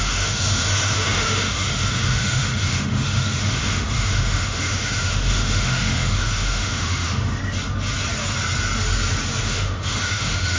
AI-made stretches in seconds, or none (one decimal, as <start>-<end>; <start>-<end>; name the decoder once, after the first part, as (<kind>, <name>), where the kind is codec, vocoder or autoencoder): 0.0-7.4 (autoencoder, DAC-VAE); 9.4-10.6